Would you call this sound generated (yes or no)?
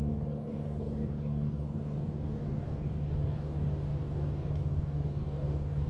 yes